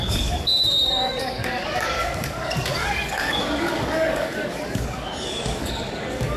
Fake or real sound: fake